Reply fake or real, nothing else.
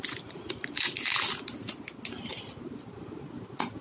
real